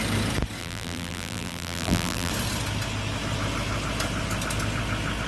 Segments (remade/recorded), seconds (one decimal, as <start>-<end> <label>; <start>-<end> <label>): 0.0-0.6 recorded; 0.6-2.3 remade; 2.3-5.3 recorded